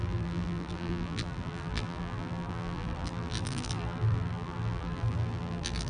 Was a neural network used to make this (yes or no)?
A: yes